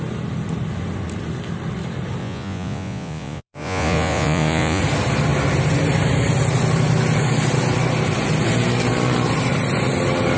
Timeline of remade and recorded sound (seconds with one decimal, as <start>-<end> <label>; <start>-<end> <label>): 0.0-2.2 recorded; 2.2-4.8 remade; 4.8-10.4 recorded